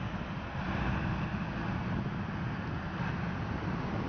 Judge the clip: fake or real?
real